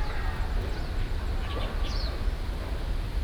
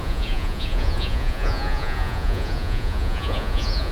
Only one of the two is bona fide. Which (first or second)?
first